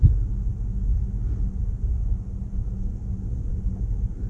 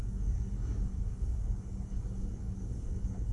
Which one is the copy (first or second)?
second